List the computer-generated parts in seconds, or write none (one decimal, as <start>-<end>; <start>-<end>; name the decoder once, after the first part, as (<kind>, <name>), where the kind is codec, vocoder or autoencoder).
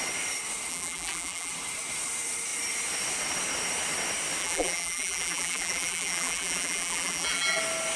0.7-1.5 (vocoder, BigVGAN v2); 4.4-7.6